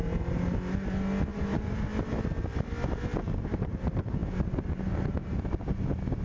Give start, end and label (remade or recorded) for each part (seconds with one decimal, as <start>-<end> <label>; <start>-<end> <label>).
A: 0.0-1.3 recorded; 1.3-2.1 remade; 2.1-6.2 recorded

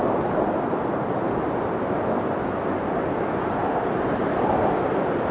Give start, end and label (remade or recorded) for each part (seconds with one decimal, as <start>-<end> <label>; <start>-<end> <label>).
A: 0.0-5.3 recorded

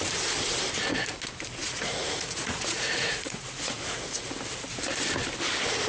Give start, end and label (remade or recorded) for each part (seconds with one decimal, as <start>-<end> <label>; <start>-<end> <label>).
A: 0.0-1.6 recorded; 1.6-4.3 remade; 4.3-5.9 recorded

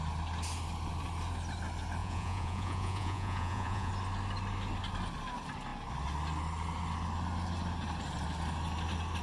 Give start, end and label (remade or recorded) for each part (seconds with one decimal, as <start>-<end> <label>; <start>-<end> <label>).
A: 0.0-2.0 recorded; 2.0-3.9 remade; 3.9-9.2 recorded

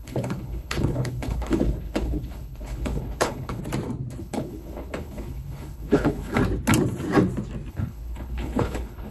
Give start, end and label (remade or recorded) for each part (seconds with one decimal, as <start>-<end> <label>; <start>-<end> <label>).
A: 0.0-3.6 remade; 3.6-4.2 recorded; 4.2-6.4 remade; 6.4-7.7 recorded; 7.7-9.1 remade

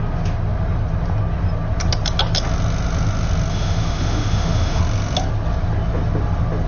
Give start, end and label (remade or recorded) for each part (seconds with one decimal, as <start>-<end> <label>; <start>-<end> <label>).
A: 0.0-3.5 recorded; 3.5-4.8 remade; 4.8-6.7 recorded

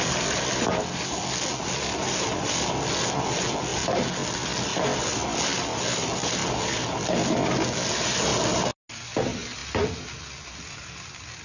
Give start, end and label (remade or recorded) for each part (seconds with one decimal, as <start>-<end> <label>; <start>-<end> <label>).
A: 0.0-9.6 recorded; 9.6-11.4 remade